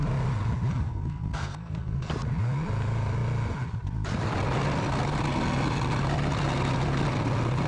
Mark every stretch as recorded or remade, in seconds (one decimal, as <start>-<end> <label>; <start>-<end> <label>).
0.0-0.7 recorded; 0.7-2.1 remade; 2.1-7.7 recorded